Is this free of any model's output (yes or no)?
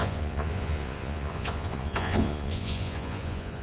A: no